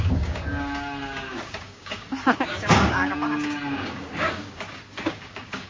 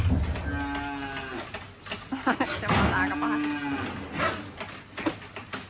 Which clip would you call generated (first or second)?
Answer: first